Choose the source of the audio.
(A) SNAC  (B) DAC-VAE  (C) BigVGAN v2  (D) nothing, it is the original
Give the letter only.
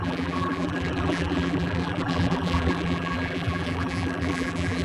C